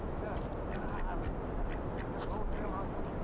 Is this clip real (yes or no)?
yes